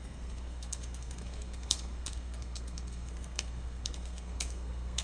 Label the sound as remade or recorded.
remade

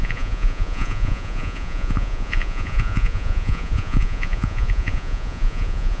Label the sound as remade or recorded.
remade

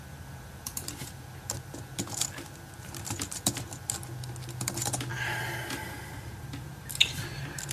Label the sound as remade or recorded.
recorded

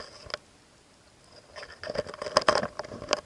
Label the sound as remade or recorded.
recorded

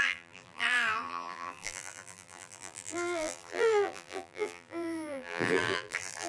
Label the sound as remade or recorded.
remade